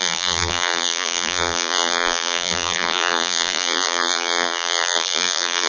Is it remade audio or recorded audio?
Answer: remade